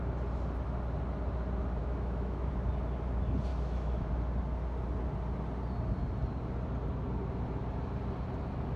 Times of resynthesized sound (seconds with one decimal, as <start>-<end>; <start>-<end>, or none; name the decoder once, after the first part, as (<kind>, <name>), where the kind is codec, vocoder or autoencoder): 1.8-2.5 (autoencoder, DAC-VAE); 3.5-4.1